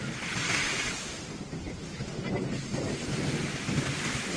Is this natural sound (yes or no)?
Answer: yes